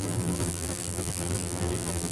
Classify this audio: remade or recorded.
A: remade